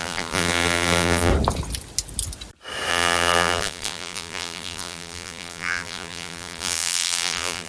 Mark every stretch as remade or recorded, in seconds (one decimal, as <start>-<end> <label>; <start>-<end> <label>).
0.0-1.3 remade; 1.3-2.9 recorded; 2.9-7.7 remade